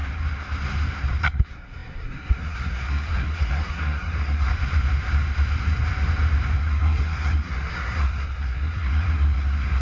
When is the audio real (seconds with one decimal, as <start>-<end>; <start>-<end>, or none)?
0.0-1.2; 4.5-6.6